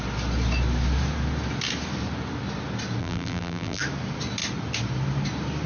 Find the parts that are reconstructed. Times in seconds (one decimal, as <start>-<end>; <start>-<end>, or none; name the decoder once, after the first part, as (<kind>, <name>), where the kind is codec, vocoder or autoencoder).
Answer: 3.0-3.8 (vocoder, BigVGAN v2)